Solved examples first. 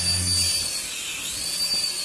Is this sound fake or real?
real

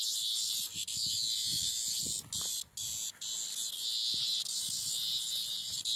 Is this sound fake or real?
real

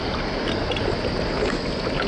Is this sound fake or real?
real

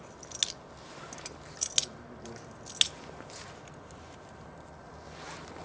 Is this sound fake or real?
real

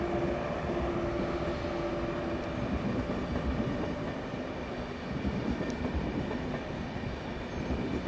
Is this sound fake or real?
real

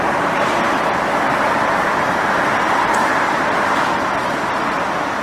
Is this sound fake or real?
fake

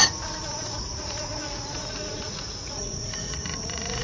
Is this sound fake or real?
fake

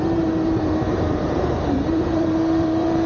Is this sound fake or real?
fake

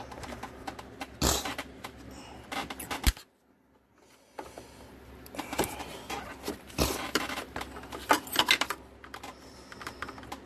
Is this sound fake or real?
real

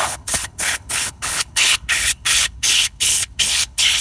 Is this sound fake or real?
fake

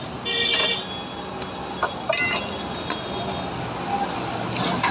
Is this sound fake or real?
real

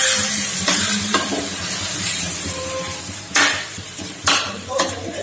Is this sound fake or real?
fake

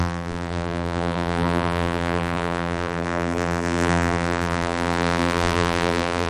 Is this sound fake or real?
fake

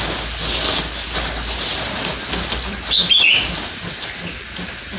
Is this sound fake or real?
real